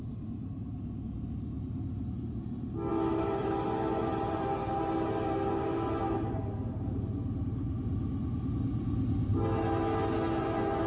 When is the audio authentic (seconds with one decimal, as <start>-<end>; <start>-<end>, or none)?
0.0-2.9; 6.4-10.9